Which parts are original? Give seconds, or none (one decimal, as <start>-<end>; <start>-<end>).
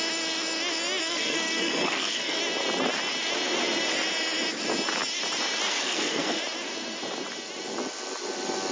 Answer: 0.0-1.0; 2.4-5.7; 6.4-8.7